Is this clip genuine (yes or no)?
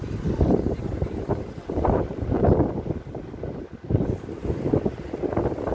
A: yes